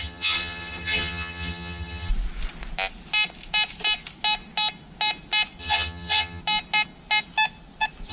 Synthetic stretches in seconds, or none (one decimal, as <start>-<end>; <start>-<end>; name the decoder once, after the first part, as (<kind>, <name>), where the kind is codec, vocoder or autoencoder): 0.0-2.1 (vocoder, HiFi-GAN); 5.6-6.4